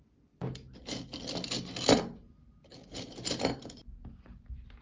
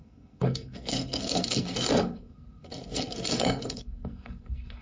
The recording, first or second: first